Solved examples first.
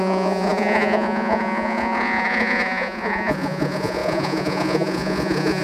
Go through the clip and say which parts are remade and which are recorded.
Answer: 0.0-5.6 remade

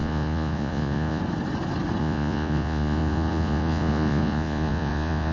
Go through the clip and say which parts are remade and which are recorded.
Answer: 0.0-1.2 remade; 1.2-2.0 recorded; 2.0-5.3 remade

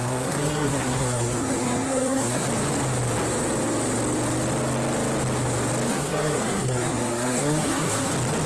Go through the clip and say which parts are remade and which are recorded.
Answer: 0.0-2.5 remade; 2.5-5.9 recorded; 5.9-8.1 remade; 8.1-8.5 recorded

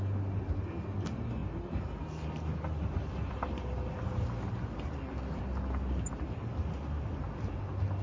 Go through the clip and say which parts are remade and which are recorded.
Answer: 0.0-8.0 recorded

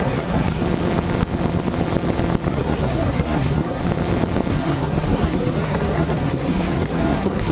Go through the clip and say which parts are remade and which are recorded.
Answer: 0.0-0.6 remade; 0.6-2.5 recorded; 2.5-3.8 remade; 3.8-4.5 recorded; 4.5-7.5 remade

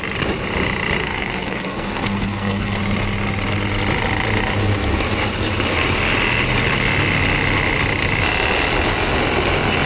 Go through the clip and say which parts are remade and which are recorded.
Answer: 0.0-1.0 recorded; 1.0-2.8 remade; 2.8-9.9 recorded

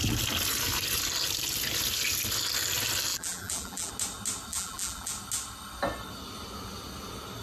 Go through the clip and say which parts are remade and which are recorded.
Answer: 0.0-3.1 recorded; 3.1-3.9 remade; 3.9-4.5 recorded; 4.5-5.1 remade; 5.1-7.4 recorded